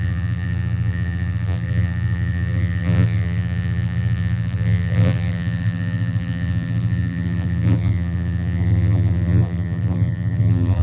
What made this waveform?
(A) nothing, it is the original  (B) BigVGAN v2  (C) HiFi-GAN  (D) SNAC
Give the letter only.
B